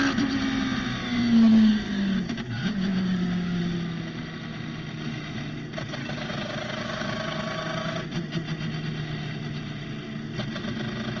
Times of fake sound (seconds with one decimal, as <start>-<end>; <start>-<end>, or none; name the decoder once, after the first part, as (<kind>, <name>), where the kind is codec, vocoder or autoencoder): 1.5-3.6 (codec, DAC); 6.0-8.1